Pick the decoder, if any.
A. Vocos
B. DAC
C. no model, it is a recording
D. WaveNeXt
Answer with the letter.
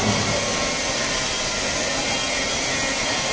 C